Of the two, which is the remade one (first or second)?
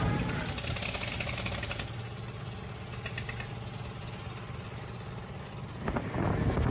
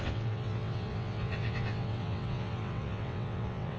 second